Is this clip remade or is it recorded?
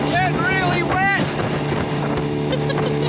recorded